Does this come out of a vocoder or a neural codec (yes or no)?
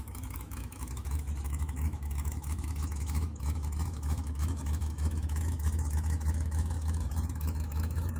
yes